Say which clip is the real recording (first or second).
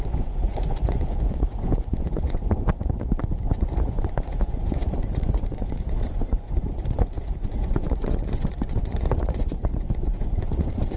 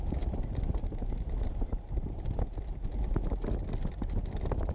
second